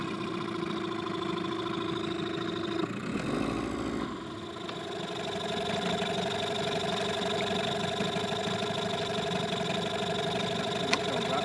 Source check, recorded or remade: recorded